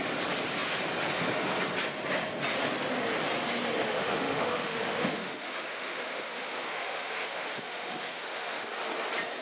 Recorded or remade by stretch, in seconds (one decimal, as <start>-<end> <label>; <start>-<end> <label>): 0.0-3.9 recorded; 3.9-8.6 remade; 8.6-9.4 recorded